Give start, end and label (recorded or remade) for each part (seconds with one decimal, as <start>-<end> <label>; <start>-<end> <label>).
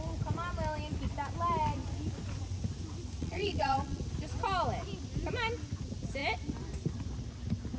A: 0.0-3.2 recorded; 3.2-4.0 remade; 4.0-7.8 recorded